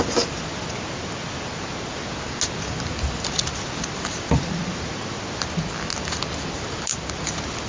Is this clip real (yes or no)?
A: yes